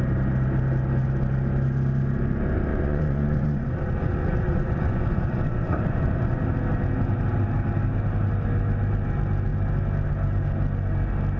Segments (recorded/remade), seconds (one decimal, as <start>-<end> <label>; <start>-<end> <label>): 0.0-2.7 recorded; 2.7-6.4 remade; 6.4-11.4 recorded